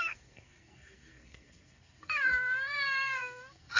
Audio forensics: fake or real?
fake